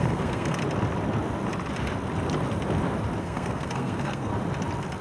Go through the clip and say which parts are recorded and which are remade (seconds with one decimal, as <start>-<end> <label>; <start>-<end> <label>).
0.0-0.6 remade; 0.6-3.2 recorded; 3.2-4.3 remade; 4.3-5.0 recorded